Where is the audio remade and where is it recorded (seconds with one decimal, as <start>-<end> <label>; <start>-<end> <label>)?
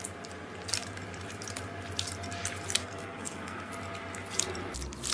0.0-2.8 recorded; 2.8-3.7 remade; 3.7-5.1 recorded